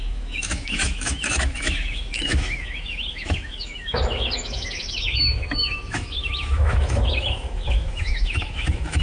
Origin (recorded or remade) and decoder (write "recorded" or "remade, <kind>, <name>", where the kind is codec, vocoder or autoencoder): remade, autoencoder, DAC-VAE